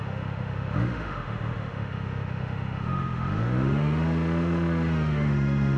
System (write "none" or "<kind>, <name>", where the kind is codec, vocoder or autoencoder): autoencoder, DAC-VAE